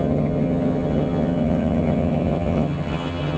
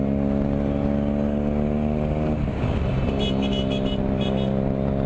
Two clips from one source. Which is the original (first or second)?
second